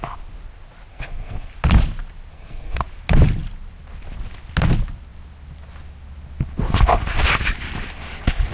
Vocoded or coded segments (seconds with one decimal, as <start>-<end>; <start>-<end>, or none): 0.9-1.5; 2.3-2.8